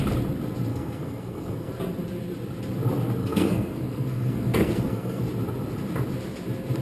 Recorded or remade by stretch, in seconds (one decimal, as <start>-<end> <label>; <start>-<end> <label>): 0.0-0.7 recorded; 0.7-1.7 remade; 1.7-3.2 recorded; 3.2-5.2 remade; 5.2-6.8 recorded